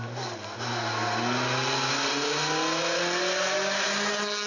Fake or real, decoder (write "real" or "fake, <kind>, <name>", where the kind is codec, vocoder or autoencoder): real